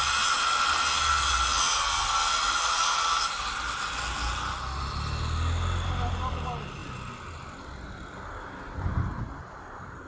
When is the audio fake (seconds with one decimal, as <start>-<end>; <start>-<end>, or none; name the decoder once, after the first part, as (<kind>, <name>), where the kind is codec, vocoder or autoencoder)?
none